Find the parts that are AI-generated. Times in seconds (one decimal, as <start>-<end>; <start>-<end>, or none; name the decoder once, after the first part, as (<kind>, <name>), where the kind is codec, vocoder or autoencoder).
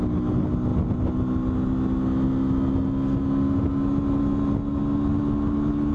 none